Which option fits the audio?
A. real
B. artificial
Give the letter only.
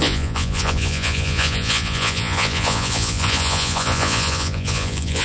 B